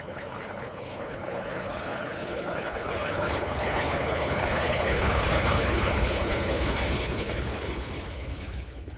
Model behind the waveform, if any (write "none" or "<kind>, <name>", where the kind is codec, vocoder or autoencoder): codec, HILCodec